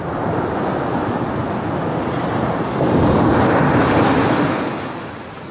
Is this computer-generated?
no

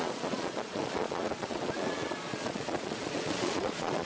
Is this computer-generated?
yes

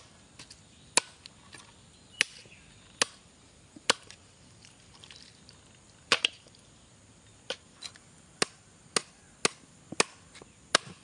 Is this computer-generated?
no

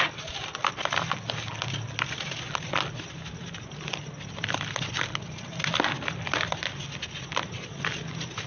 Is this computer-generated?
no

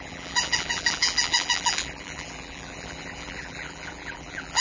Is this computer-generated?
yes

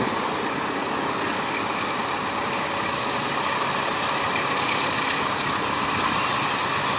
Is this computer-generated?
no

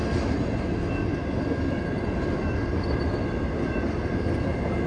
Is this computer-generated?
no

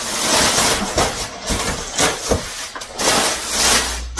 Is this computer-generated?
no